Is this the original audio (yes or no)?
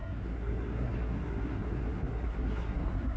no